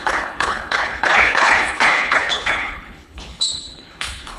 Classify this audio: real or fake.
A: fake